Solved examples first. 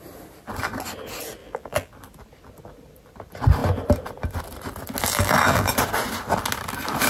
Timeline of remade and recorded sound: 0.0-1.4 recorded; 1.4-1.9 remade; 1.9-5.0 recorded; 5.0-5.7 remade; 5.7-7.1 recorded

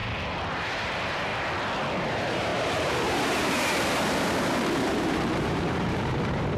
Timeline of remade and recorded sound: 0.0-0.5 recorded; 0.5-1.3 remade; 1.3-2.1 recorded; 2.1-6.6 remade

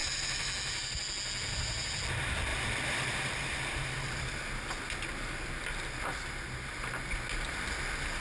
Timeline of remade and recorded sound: 0.0-0.5 remade; 0.5-2.5 recorded; 2.5-4.3 remade; 4.3-8.2 recorded